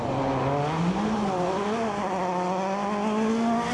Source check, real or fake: real